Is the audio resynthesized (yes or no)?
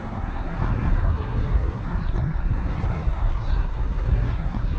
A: yes